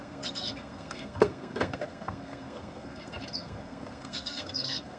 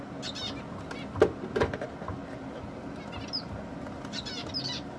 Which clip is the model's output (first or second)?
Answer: first